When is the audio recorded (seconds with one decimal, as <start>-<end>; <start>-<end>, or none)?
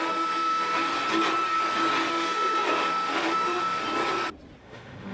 0.9-2.1; 3.8-4.6